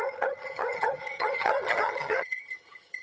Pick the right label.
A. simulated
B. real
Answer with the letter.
A